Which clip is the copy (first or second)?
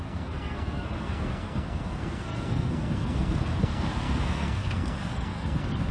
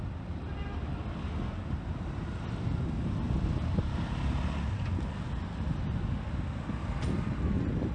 first